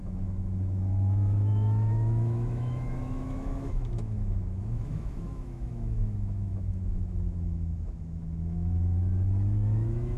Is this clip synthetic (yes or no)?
yes